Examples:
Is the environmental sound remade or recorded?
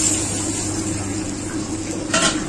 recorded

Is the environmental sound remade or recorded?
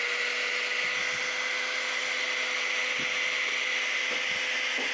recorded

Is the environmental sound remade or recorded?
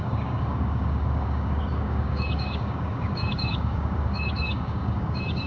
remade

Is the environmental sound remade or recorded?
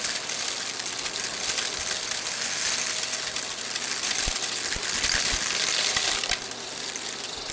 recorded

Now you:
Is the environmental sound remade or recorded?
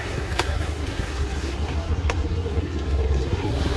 remade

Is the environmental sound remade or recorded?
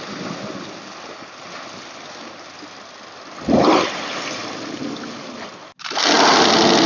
recorded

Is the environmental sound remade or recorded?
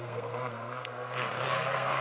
remade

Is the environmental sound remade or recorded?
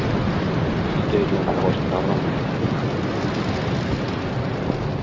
recorded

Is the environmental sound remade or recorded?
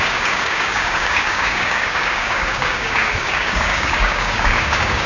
remade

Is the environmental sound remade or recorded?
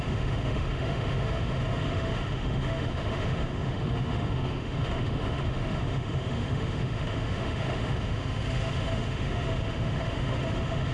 remade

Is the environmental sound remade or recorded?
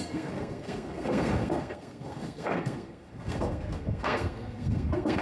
remade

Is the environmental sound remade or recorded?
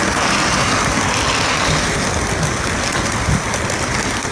recorded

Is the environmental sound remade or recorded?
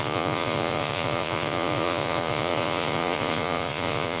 remade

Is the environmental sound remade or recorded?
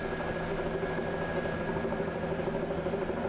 recorded